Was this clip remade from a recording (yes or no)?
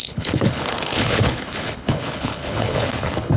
yes